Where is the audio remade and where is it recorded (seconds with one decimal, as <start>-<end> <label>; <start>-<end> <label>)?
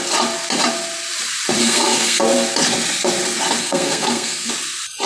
0.0-1.6 recorded; 1.6-2.2 remade; 2.2-3.6 recorded; 3.6-4.5 remade; 4.5-5.1 recorded